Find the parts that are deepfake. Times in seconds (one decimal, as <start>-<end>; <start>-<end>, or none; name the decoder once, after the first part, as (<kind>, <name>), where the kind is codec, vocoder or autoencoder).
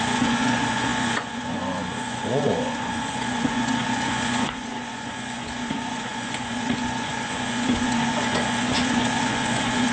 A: 0.0-9.9 (vocoder, Vocos)